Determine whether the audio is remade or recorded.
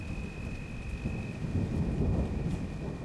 recorded